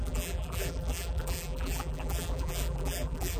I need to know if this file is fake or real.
fake